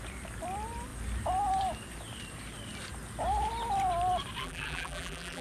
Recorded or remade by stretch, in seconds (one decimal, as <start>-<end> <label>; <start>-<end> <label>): 0.0-4.4 recorded; 4.4-5.4 remade